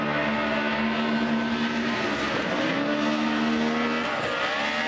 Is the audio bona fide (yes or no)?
yes